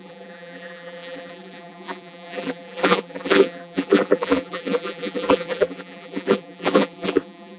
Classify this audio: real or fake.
fake